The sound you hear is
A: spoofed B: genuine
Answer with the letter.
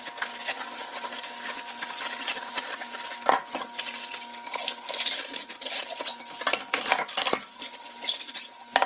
B